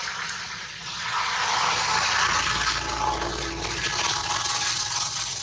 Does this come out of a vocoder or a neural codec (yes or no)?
no